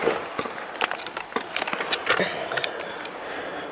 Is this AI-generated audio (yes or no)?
no